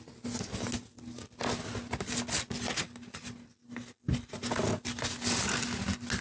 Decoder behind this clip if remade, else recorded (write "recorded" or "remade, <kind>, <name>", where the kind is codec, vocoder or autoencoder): recorded